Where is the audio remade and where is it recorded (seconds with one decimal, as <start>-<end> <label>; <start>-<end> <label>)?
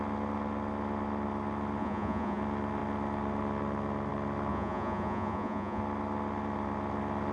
0.0-1.8 recorded; 1.8-2.4 remade; 2.4-4.5 recorded; 4.5-5.8 remade; 5.8-7.3 recorded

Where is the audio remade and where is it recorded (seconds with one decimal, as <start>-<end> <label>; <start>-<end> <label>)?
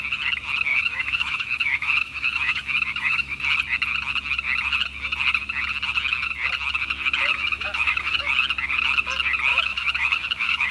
0.0-0.7 recorded; 0.7-3.4 remade; 3.4-7.3 recorded; 7.3-8.3 remade; 8.3-9.5 recorded; 9.5-10.7 remade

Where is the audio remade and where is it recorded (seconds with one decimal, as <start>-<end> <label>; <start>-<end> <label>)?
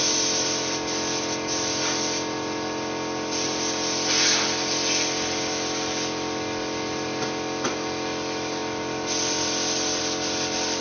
0.0-10.8 recorded